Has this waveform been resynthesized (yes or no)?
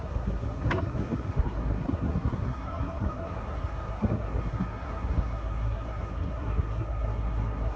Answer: yes